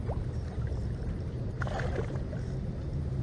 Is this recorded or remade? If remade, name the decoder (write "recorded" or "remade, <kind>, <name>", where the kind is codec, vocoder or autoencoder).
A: remade, vocoder, BigVGAN v2